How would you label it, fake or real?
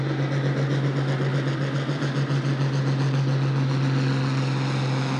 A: real